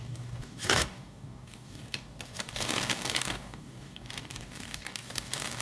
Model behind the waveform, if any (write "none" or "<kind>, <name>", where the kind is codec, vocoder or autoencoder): codec, DAC